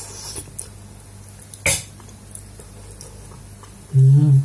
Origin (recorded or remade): recorded